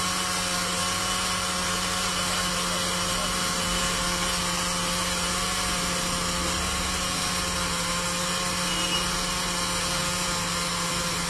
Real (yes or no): yes